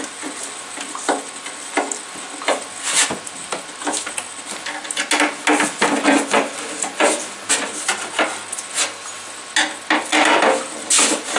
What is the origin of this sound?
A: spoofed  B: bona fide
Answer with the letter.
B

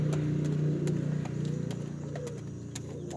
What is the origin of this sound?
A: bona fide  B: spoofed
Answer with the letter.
A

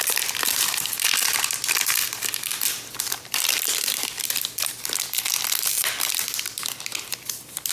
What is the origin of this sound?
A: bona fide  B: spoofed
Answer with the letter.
B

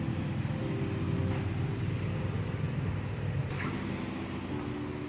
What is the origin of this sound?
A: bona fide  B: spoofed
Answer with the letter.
A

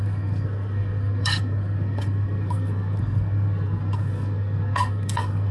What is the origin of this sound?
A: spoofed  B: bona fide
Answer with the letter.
A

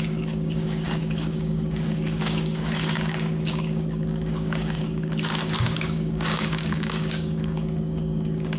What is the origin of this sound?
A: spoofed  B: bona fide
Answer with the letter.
A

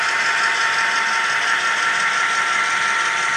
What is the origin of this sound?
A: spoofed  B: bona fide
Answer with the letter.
B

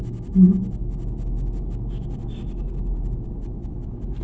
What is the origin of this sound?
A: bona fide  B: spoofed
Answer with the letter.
A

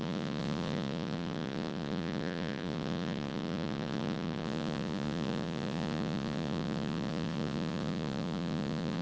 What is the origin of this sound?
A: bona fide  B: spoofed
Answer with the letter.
B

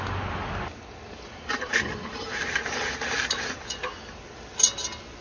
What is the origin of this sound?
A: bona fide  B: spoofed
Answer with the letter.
A